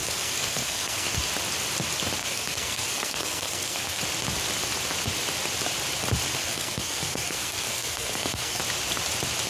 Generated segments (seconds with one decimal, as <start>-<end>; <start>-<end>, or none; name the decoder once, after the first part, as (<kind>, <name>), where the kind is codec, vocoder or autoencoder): 0.0-1.2 (codec, SNAC); 2.2-4.0; 6.4-8.6